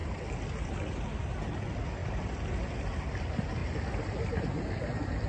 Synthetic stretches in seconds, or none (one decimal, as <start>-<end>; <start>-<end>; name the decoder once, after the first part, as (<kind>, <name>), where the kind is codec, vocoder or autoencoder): none

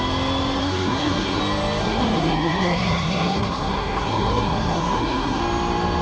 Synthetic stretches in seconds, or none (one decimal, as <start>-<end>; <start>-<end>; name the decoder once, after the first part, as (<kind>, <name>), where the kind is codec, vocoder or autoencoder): 0.6-1.4 (codec, SNAC); 1.8-5.4